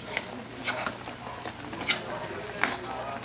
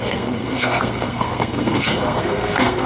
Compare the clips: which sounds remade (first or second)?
second